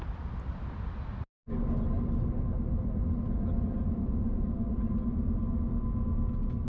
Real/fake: real